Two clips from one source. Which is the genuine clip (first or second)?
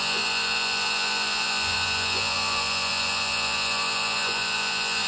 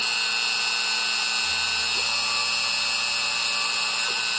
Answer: second